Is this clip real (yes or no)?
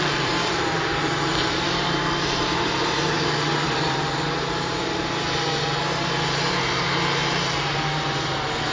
no